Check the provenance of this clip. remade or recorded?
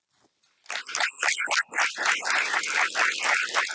recorded